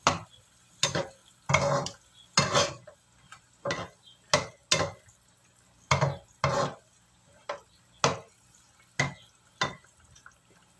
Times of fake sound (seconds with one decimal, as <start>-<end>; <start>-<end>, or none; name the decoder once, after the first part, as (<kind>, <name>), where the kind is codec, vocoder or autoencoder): none